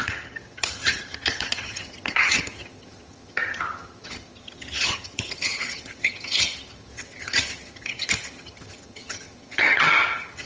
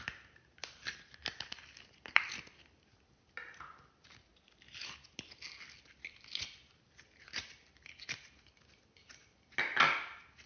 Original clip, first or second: second